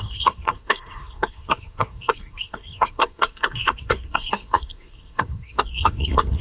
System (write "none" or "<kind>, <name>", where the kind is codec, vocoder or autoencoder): codec, SNAC